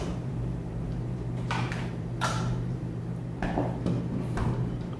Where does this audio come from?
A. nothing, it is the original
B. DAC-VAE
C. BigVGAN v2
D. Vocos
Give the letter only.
C